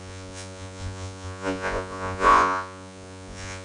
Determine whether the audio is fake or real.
fake